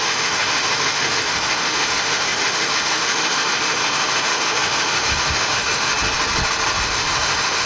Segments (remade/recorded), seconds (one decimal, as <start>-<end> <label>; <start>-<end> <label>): 0.0-5.9 remade; 5.9-6.8 recorded; 6.8-7.7 remade